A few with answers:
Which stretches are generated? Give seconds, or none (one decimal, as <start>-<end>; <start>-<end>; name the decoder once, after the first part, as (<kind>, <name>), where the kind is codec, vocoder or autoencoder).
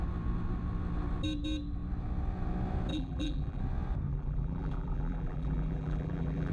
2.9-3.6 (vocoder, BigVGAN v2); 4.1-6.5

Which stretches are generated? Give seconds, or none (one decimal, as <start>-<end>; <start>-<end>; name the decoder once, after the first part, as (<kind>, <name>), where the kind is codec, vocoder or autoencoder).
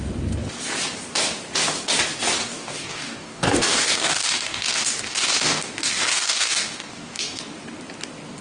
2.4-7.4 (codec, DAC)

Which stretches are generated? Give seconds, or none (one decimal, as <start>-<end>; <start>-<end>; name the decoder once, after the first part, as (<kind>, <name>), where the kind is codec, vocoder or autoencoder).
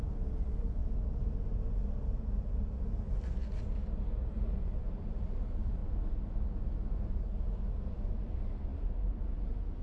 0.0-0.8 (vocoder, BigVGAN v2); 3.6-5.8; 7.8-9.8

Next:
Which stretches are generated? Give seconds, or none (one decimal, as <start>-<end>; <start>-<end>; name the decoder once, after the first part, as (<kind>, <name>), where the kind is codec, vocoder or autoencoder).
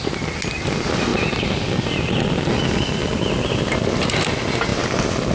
none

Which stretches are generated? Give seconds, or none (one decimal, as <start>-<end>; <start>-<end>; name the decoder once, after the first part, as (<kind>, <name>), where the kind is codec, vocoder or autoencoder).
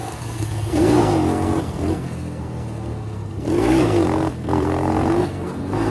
0.0-5.9 (codec, SNAC)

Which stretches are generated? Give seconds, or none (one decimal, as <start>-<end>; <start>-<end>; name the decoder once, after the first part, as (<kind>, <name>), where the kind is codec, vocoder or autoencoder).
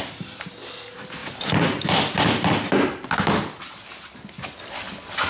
none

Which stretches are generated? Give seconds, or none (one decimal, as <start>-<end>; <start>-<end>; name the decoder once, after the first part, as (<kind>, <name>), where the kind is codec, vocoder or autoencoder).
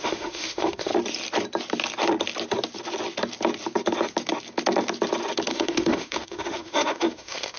0.0-0.9 (autoencoder, DAC-VAE); 5.5-7.6